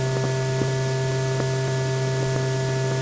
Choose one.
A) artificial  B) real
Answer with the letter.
B